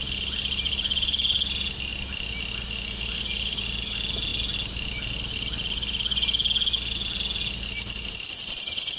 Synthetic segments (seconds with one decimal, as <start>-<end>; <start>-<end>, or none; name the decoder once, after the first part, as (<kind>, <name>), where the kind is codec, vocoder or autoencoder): none